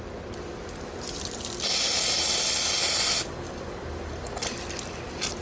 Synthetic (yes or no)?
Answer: no